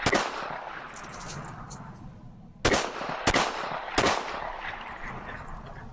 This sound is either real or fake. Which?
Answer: real